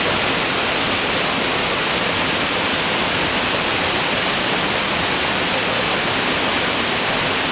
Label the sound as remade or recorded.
recorded